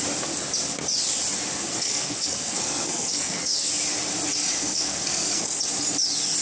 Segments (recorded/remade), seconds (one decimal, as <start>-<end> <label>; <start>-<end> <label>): 0.0-1.7 recorded; 1.7-3.7 remade; 3.7-4.6 recorded; 4.6-5.6 remade; 5.6-6.4 recorded